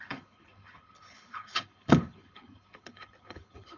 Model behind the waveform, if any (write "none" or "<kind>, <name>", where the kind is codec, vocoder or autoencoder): codec, HILCodec